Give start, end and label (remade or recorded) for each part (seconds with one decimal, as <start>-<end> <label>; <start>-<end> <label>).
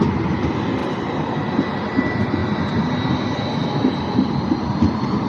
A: 0.0-5.3 recorded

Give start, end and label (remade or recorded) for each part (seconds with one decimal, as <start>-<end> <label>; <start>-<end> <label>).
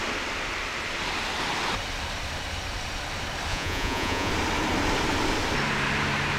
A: 0.0-3.5 recorded; 3.5-4.3 remade; 4.3-6.4 recorded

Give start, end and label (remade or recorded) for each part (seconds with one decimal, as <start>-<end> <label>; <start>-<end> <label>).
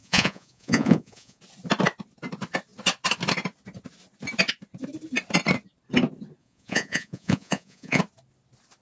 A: 0.0-1.4 remade; 1.4-6.4 recorded; 6.4-8.0 remade; 8.0-8.8 recorded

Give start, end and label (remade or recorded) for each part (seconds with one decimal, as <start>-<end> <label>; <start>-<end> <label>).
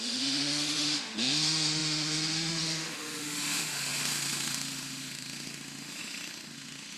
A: 0.0-7.0 remade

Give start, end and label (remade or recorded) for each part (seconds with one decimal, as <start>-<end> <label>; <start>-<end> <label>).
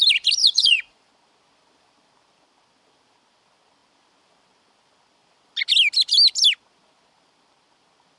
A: 0.0-0.4 recorded; 0.4-1.1 remade; 1.1-8.2 recorded